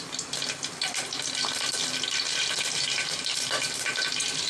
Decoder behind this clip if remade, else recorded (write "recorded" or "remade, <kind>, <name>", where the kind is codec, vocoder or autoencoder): recorded